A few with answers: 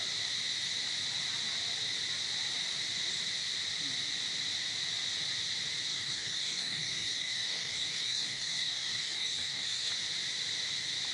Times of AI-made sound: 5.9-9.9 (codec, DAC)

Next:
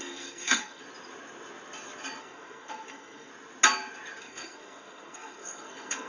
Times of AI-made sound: 0.0-0.8 (codec, SNAC); 2.2-3.3; 4.2-6.1

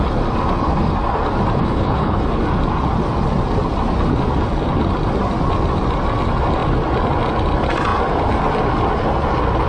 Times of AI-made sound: 1.6-2.2 (codec, HILCodec)

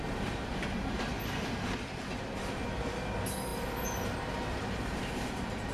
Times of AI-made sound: none

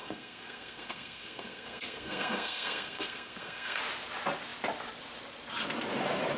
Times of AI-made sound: 0.0-3.8 (codec, SNAC)

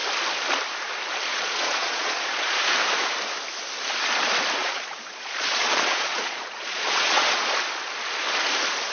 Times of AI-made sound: 1.3-2.7 (vocoder, Vocos); 4.6-7.5

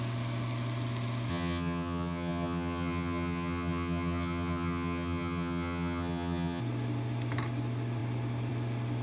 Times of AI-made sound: 1.3-6.6 (vocoder, HiFi-GAN)